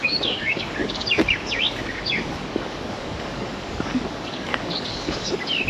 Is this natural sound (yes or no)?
no